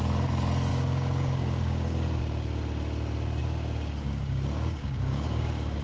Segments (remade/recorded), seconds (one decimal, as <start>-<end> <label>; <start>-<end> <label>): 0.0-0.7 recorded; 0.7-2.2 remade; 2.2-3.4 recorded; 3.4-5.8 remade